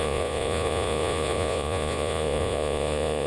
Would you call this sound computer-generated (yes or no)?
yes